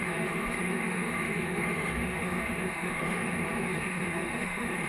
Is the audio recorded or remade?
remade